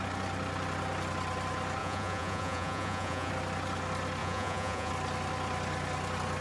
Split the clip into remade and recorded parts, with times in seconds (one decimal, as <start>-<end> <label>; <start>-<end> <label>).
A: 0.0-1.8 recorded; 1.8-3.3 remade; 3.3-4.2 recorded; 4.2-4.9 remade; 4.9-6.4 recorded